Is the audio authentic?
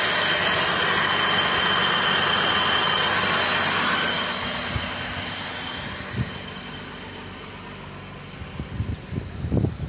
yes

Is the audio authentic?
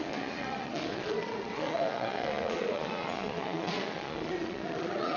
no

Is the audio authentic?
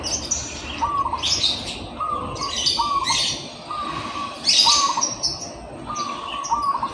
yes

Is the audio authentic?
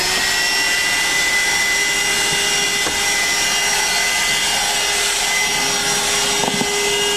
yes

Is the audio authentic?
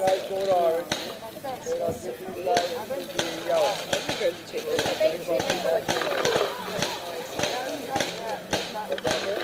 yes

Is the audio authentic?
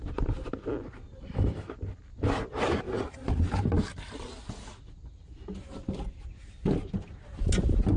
yes